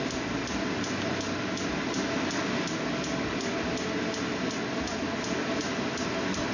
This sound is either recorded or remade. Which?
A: recorded